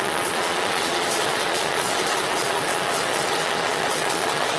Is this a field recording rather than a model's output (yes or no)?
no